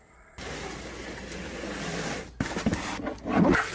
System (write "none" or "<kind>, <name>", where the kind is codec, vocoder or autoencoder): none